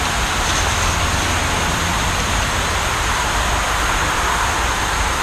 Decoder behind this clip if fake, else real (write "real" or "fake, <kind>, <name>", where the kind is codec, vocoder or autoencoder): real